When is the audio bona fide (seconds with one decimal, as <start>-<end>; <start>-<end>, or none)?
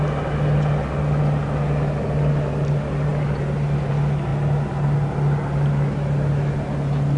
0.0-7.2